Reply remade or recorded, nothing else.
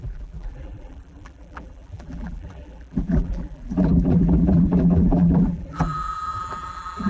remade